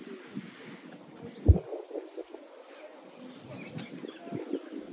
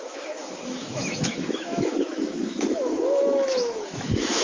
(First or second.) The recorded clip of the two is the first